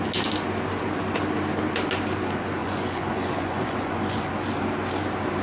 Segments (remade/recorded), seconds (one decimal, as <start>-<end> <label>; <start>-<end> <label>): 0.0-2.6 recorded; 2.6-4.3 remade; 4.3-5.4 recorded

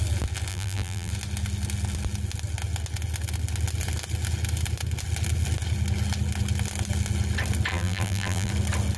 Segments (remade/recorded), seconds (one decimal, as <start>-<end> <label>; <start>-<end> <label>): 0.0-0.5 recorded; 0.5-1.1 remade; 1.1-7.7 recorded; 7.7-8.5 remade; 8.5-9.0 recorded